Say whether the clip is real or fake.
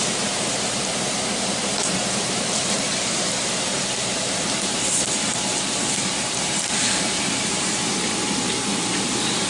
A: fake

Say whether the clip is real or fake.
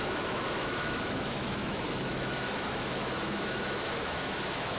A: fake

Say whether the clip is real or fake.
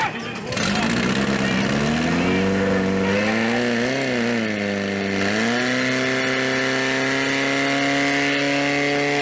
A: real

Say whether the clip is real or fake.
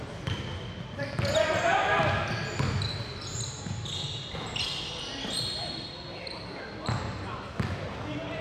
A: real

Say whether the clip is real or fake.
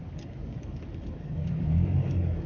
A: fake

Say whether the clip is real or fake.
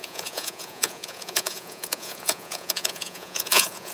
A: fake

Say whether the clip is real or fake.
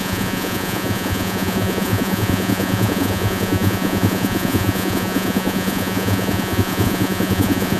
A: fake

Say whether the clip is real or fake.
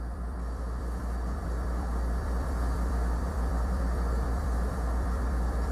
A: fake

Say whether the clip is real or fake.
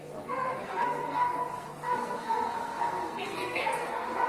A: fake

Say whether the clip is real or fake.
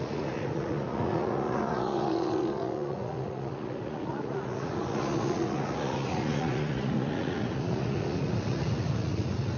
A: fake